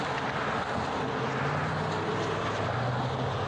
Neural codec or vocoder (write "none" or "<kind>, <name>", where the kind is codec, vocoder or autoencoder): none